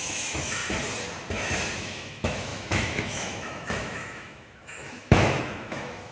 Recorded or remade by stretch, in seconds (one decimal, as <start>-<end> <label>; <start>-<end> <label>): 0.0-0.6 remade; 0.6-1.8 recorded; 1.8-6.1 remade

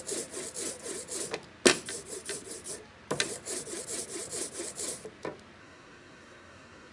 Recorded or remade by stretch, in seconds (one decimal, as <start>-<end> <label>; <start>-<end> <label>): 0.0-5.6 recorded; 5.6-6.9 remade

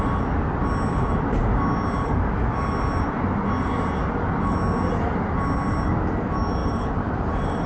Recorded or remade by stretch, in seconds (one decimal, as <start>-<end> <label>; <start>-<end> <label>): 0.0-6.6 recorded; 6.6-7.7 remade

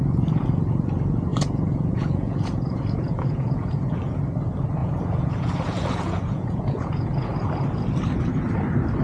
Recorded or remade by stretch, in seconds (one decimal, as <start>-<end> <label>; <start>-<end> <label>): 0.0-1.3 recorded; 1.3-4.2 remade; 4.2-4.8 recorded; 4.8-7.3 remade; 7.3-9.0 recorded

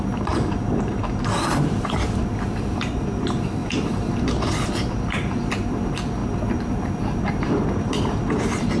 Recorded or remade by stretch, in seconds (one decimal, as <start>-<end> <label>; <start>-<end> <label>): 0.0-8.8 remade